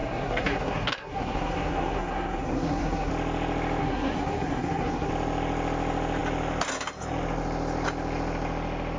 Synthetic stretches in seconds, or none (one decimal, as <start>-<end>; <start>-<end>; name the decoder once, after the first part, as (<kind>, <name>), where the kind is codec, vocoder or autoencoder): 0.0-3.1 (codec, SNAC); 3.8-5.1